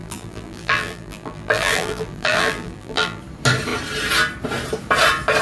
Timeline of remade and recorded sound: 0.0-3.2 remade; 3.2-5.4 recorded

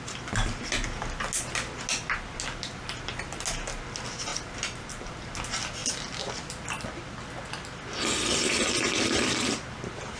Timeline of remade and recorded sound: 0.0-4.3 recorded; 4.3-5.1 remade; 5.1-10.2 recorded

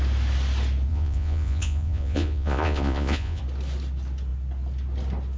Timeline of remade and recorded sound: 0.0-0.9 recorded; 0.9-3.4 remade; 3.4-5.4 recorded

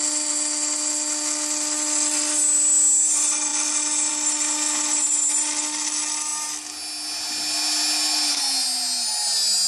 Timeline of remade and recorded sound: 0.0-9.7 recorded

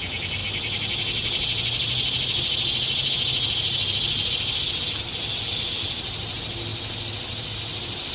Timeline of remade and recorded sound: 0.0-8.1 recorded

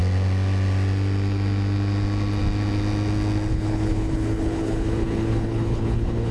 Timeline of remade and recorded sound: 0.0-3.5 recorded; 3.5-6.3 remade

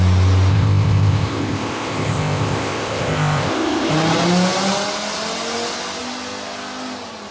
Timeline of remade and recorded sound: 0.0-0.5 recorded; 0.5-3.9 remade; 3.9-7.3 recorded